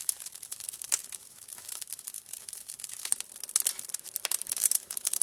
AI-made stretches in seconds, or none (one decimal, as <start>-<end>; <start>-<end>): 0.0-3.1; 4.4-5.2